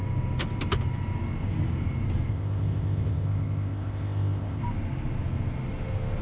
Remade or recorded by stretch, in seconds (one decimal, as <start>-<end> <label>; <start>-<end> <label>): 0.0-2.3 recorded; 2.3-4.6 remade; 4.6-6.2 recorded